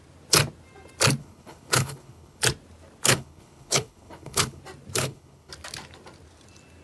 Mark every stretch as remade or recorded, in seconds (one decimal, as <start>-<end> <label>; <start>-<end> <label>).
0.0-1.2 recorded; 1.2-2.4 remade; 2.4-3.1 recorded; 3.1-4.6 remade; 4.6-5.0 recorded; 5.0-5.5 remade; 5.5-6.8 recorded